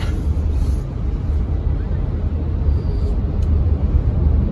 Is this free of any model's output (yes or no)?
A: yes